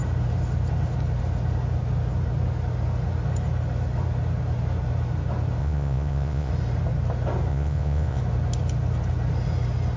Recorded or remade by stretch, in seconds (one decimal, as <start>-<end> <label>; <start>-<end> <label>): 0.0-5.6 recorded; 5.6-6.5 remade; 6.5-7.5 recorded; 7.5-8.2 remade; 8.2-10.0 recorded